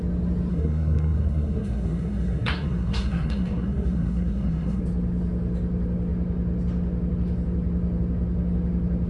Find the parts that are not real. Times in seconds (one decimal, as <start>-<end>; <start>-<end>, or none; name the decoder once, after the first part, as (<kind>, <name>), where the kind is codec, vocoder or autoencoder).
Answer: 0.5-4.8 (codec, SNAC)